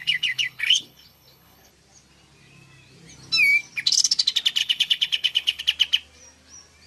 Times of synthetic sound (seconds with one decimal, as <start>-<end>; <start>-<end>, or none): 0.0-1.7; 4.6-5.6